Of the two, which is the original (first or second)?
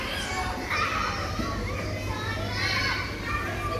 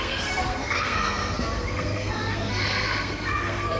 first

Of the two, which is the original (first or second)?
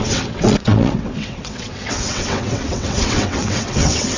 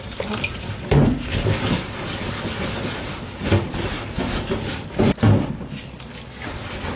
second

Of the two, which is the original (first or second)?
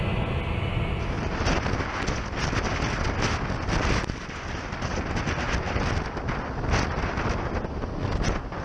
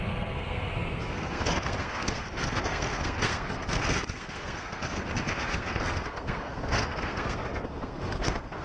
first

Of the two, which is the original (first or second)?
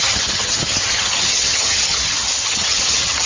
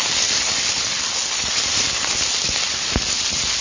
second